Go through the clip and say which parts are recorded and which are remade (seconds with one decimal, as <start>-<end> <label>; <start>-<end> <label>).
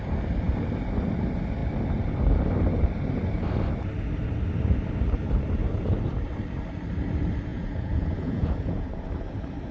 0.0-7.5 recorded; 7.5-8.9 remade; 8.9-9.7 recorded